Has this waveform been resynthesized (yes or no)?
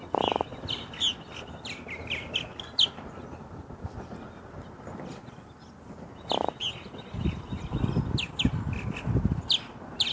no